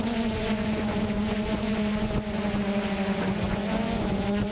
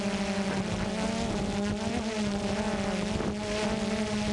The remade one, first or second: first